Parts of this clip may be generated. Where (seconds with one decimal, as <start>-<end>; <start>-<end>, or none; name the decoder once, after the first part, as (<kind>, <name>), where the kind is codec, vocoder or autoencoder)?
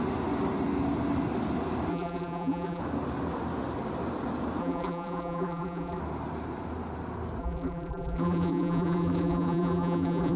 1.9-2.8 (vocoder, BigVGAN v2); 4.6-6.0; 7.4-10.4